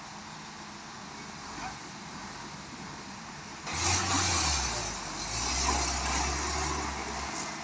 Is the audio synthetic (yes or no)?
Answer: no